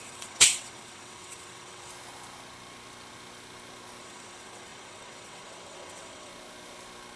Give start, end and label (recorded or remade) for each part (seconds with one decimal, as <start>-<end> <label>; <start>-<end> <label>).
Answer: 0.0-1.9 remade; 1.9-4.0 recorded; 4.0-6.3 remade; 6.3-7.2 recorded